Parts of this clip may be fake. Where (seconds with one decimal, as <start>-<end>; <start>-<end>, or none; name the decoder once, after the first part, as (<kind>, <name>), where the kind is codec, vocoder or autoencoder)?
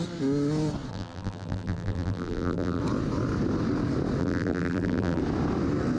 0.9-2.8 (vocoder, BigVGAN v2); 4.2-5.2